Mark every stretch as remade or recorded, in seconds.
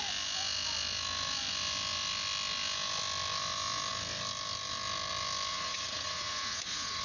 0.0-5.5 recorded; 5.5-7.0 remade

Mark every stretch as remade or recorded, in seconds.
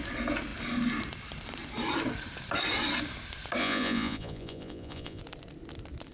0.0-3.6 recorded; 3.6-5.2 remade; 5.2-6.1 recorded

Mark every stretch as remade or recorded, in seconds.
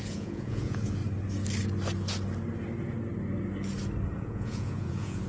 0.0-1.0 remade; 1.0-4.2 recorded; 4.2-5.3 remade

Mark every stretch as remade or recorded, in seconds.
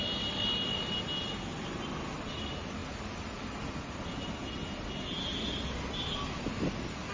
0.0-7.1 recorded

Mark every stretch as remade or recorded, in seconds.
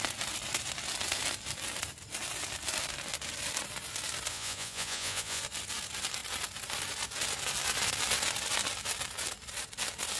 0.0-4.3 recorded; 4.3-5.4 remade; 5.4-10.2 recorded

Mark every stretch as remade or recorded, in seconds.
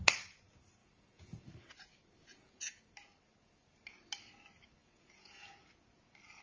0.0-0.8 recorded; 0.8-1.5 remade; 1.5-2.3 recorded; 2.3-2.9 remade; 2.9-4.8 recorded; 4.8-5.6 remade; 5.6-6.4 recorded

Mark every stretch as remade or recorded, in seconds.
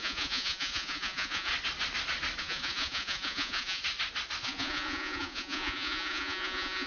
0.0-1.5 remade; 1.5-2.4 recorded; 2.4-3.8 remade; 3.8-4.4 recorded; 4.4-6.9 remade